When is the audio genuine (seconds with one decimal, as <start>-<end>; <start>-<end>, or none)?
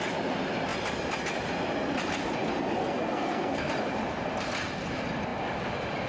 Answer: 0.0-2.8; 3.7-6.1